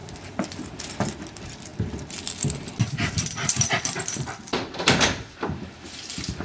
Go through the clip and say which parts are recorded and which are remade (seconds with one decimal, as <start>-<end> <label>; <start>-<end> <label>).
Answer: 0.0-1.0 recorded; 1.0-6.4 remade